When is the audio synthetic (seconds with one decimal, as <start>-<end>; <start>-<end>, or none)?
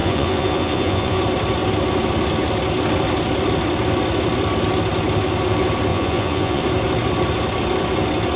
0.0-1.2; 5.9-6.6